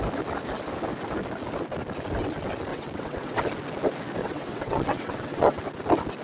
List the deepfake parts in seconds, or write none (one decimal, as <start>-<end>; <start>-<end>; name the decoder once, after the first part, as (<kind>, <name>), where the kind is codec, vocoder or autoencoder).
2.7-3.4 (vocoder, WaveNeXt); 4.2-5.6